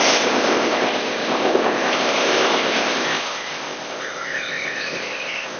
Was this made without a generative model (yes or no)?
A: no